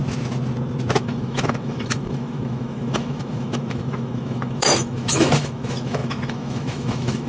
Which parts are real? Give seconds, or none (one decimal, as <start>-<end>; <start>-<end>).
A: 0.0-1.0

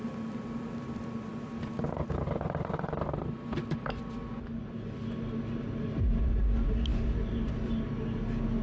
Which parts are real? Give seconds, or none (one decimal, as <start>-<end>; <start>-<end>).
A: 0.0-8.6

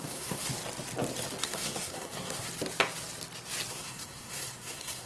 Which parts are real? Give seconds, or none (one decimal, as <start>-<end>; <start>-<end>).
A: 0.5-1.4; 2.5-3.7

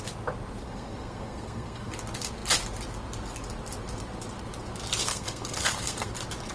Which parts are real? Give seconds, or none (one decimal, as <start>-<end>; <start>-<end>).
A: 0.0-0.6; 1.9-5.0; 6.1-6.5

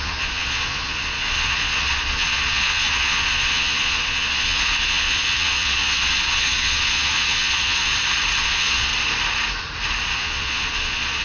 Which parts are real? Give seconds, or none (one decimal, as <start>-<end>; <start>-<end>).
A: 7.9-8.4; 8.9-10.1

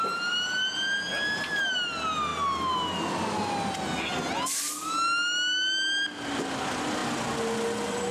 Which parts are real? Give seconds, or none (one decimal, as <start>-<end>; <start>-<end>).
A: 0.0-8.1

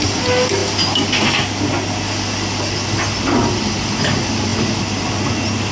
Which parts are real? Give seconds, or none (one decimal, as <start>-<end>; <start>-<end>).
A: 0.0-5.7

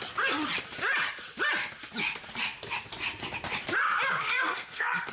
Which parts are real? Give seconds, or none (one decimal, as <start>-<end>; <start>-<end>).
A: 0.0-4.2